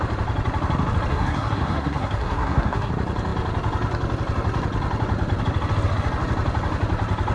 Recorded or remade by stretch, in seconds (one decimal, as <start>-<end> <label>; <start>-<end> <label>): 0.0-1.1 recorded; 1.1-2.9 remade; 2.9-7.3 recorded